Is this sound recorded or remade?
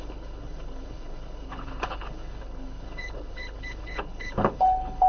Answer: remade